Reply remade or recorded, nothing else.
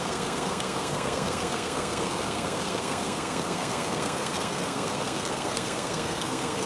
remade